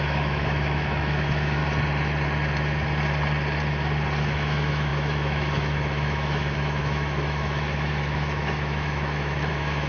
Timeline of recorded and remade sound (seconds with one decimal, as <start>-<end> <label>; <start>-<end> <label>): 0.0-1.6 remade; 1.6-4.2 recorded; 4.2-9.9 remade